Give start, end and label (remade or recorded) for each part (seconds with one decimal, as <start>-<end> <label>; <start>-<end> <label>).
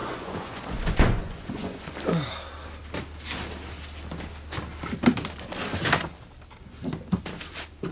0.0-1.9 remade; 1.9-7.9 recorded